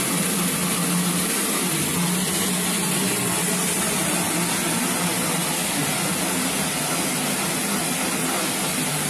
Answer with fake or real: real